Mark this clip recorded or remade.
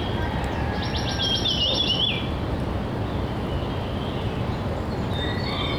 recorded